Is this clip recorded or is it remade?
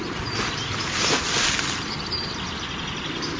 recorded